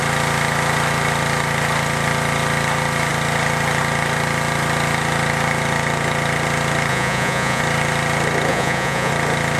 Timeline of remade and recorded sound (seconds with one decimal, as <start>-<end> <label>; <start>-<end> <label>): 0.0-6.9 recorded; 6.9-7.6 remade; 7.6-8.5 recorded; 8.5-9.1 remade; 9.1-9.6 recorded